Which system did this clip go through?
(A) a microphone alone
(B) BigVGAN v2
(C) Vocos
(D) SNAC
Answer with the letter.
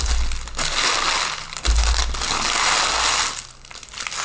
A